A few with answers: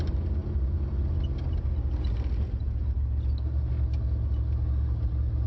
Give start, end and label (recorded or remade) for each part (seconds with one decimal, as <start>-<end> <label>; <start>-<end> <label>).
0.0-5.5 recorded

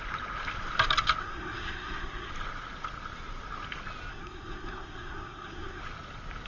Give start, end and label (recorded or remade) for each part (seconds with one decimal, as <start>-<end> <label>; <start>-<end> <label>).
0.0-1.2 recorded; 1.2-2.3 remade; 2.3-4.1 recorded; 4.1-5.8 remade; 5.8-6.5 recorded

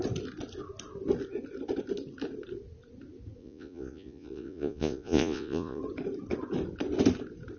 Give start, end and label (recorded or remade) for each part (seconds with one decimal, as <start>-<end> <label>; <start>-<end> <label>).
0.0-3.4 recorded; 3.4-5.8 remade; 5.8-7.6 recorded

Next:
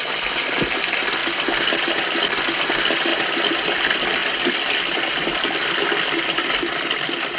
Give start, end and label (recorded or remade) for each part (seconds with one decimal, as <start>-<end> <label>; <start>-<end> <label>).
0.0-1.2 remade; 1.2-2.7 recorded; 2.7-3.1 remade; 3.1-3.8 recorded; 3.8-7.4 remade

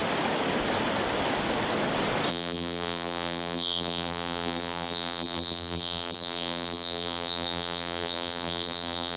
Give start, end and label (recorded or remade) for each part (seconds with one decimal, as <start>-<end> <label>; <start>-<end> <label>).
0.0-2.3 recorded; 2.3-9.2 remade

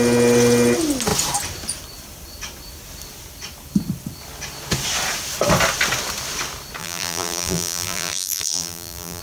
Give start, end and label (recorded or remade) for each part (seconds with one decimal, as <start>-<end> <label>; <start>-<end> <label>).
0.0-6.8 recorded; 6.8-9.2 remade

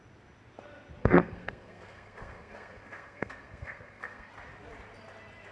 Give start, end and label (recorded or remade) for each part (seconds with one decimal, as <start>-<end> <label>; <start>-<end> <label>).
0.0-1.0 recorded; 1.0-4.3 remade; 4.3-5.5 recorded

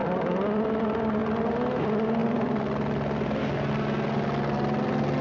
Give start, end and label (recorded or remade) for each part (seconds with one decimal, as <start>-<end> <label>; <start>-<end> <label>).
0.0-0.6 remade; 0.6-2.2 recorded; 2.2-3.4 remade; 3.4-5.2 recorded